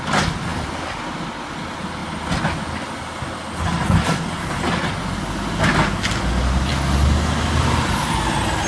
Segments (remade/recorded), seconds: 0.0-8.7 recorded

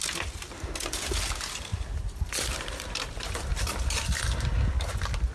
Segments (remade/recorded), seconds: 0.0-1.7 recorded; 1.7-3.5 remade; 3.5-5.3 recorded

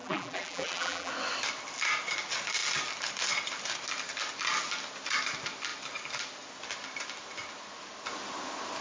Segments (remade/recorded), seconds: 0.0-1.1 remade; 1.1-8.8 recorded

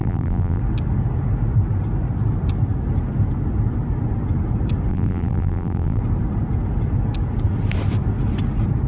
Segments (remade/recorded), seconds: 0.0-0.6 remade; 0.6-4.9 recorded; 4.9-6.0 remade; 6.0-8.9 recorded

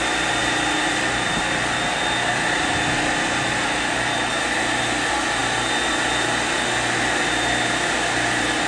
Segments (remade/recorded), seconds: 0.0-8.7 recorded

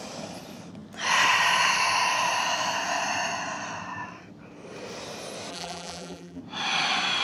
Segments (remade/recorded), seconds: 0.0-5.5 recorded; 5.5-6.4 remade; 6.4-7.2 recorded